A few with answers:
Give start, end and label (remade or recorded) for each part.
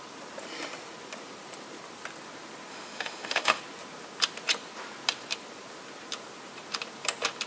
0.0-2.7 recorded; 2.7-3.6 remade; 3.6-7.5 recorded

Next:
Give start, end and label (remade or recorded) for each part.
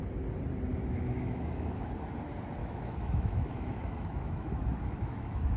0.0-0.7 recorded; 0.7-1.9 remade; 1.9-2.6 recorded; 2.6-5.6 remade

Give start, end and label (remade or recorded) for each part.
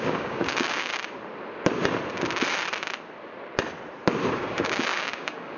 0.0-0.9 remade; 0.9-4.3 recorded; 4.3-5.6 remade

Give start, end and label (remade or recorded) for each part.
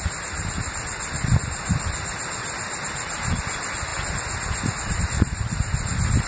0.0-6.3 recorded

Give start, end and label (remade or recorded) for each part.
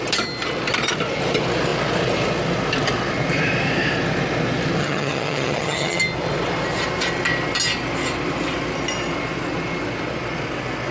0.0-4.8 recorded; 4.8-6.0 remade; 6.0-10.9 recorded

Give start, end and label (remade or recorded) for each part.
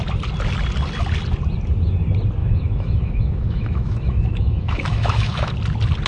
0.0-2.4 recorded; 2.4-5.5 remade; 5.5-6.1 recorded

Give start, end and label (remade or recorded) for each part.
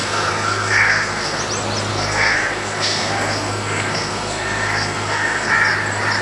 0.0-1.4 remade; 1.4-1.9 recorded; 1.9-5.5 remade; 5.5-6.2 recorded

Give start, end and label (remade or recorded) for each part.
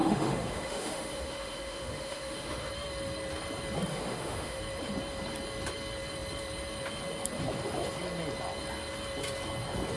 0.0-2.7 remade; 2.7-3.9 recorded; 3.9-4.6 remade; 4.6-10.0 recorded